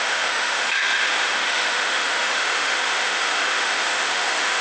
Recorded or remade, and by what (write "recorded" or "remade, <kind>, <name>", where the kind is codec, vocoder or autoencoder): remade, autoencoder, DAC-VAE